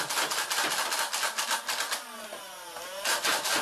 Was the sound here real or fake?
real